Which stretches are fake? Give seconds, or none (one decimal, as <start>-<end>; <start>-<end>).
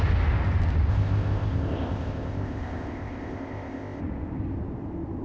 0.9-4.0